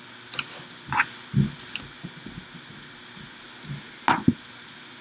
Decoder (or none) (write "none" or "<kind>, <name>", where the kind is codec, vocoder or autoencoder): none